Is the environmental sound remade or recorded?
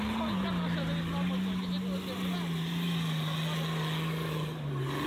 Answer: recorded